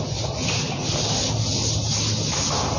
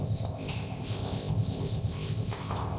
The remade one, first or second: second